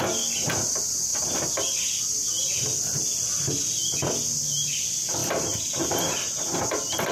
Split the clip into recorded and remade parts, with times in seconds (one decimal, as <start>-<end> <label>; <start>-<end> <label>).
0.0-5.2 recorded; 5.2-6.3 remade; 6.3-7.1 recorded